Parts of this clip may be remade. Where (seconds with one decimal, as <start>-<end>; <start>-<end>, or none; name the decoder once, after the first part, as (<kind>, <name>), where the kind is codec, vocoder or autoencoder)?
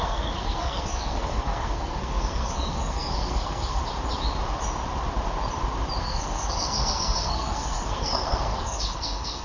0.0-3.8 (codec, SNAC); 6.0-9.4